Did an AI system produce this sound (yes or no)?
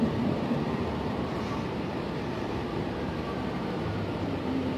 yes